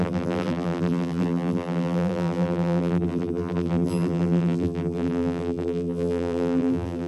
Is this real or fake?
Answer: fake